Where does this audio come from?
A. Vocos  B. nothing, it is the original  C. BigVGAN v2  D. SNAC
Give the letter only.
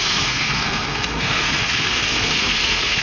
D